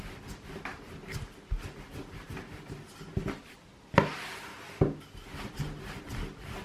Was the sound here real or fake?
real